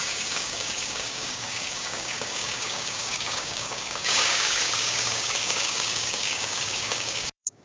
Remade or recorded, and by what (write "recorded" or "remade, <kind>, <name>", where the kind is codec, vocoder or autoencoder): remade, codec, DAC